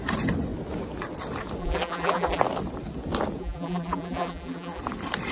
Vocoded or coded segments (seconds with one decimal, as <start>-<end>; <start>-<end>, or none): 1.6-2.4; 3.4-4.8